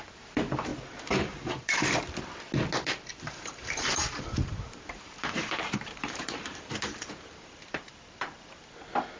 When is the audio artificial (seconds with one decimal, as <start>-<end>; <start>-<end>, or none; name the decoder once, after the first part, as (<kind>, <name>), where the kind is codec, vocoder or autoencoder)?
0.7-2.2 (vocoder, BigVGAN v2); 3.1-7.9